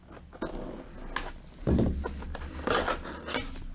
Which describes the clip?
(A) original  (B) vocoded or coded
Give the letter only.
A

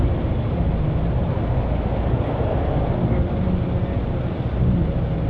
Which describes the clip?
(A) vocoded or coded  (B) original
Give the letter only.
B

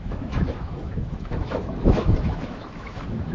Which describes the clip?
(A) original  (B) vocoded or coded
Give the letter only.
B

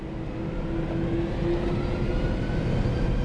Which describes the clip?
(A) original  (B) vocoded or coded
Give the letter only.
A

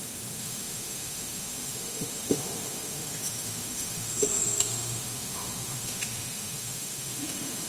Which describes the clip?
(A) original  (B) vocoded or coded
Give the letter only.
B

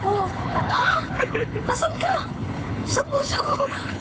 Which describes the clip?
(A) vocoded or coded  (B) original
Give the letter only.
A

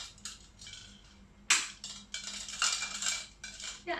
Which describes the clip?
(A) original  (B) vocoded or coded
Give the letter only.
A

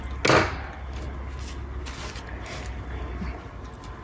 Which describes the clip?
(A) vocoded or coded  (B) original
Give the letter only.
B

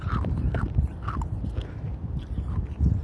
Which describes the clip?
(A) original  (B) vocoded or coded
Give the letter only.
A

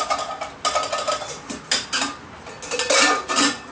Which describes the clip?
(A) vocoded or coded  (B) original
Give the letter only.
B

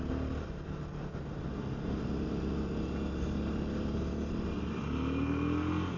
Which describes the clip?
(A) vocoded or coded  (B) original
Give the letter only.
B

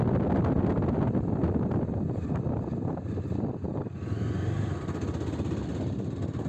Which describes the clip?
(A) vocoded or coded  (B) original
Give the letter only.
B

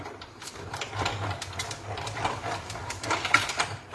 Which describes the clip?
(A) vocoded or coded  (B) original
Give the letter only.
A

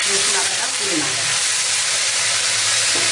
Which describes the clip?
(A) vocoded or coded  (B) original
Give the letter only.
A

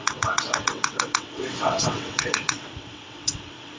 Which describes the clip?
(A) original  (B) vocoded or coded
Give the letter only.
B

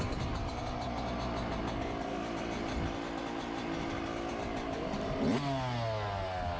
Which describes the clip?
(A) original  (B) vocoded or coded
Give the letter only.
A